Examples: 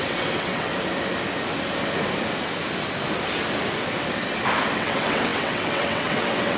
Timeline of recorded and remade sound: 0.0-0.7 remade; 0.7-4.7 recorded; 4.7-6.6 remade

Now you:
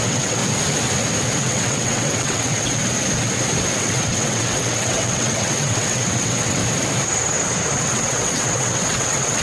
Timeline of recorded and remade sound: 0.0-0.4 remade; 0.4-1.4 recorded; 1.4-2.8 remade; 2.8-3.8 recorded; 3.8-6.6 remade; 6.6-7.8 recorded; 7.8-9.4 remade